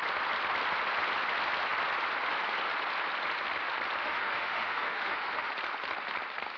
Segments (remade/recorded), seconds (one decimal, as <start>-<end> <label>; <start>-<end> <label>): 0.0-4.0 recorded; 4.0-5.5 remade; 5.5-6.6 recorded